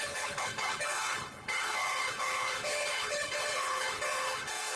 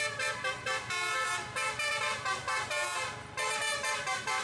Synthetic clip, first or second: first